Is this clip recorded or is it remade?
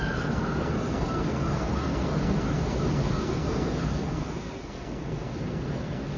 remade